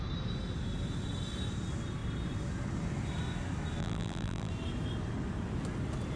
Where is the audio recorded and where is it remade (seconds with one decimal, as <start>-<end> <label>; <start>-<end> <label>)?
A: 0.0-3.8 recorded; 3.8-4.5 remade; 4.5-6.2 recorded